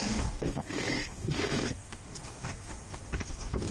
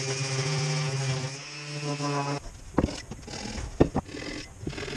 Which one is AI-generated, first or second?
first